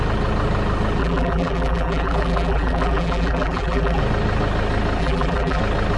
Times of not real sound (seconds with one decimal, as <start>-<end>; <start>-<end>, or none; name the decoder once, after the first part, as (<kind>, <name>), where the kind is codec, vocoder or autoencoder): 1.0-4.0 (vocoder, BigVGAN v2); 5.0-5.6